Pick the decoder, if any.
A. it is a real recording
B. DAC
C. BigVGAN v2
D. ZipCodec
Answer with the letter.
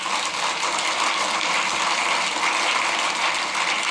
A